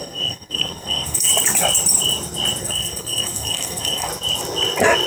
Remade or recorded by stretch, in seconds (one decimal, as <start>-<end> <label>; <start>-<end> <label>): 0.0-1.3 remade; 1.3-2.6 recorded; 2.6-4.1 remade; 4.1-5.1 recorded